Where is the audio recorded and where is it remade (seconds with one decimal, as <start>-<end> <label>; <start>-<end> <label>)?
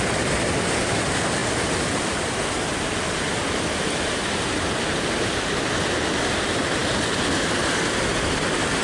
0.0-8.8 recorded